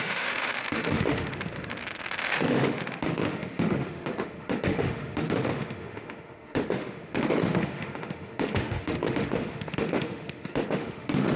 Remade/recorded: remade